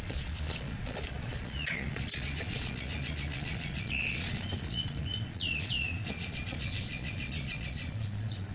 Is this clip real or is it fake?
fake